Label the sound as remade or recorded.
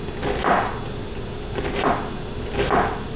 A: recorded